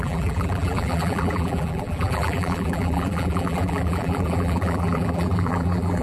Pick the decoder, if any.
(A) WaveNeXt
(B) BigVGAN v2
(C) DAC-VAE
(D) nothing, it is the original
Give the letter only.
B